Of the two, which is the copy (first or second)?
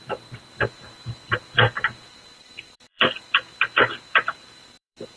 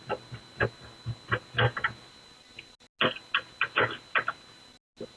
first